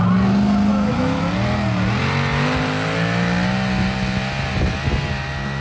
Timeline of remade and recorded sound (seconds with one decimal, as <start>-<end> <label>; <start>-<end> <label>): 0.0-0.7 recorded; 0.7-1.2 remade; 1.2-5.6 recorded